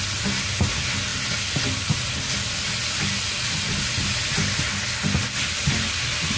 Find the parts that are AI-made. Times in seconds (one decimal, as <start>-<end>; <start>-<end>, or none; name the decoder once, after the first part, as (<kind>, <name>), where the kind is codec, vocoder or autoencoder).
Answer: none